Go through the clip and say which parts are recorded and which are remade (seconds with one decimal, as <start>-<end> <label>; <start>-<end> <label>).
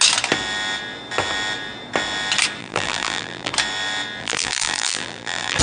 0.0-2.6 recorded; 2.6-3.5 remade; 3.5-4.2 recorded; 4.2-5.6 remade